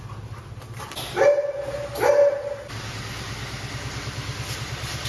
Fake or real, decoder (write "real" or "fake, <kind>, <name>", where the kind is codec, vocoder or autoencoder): real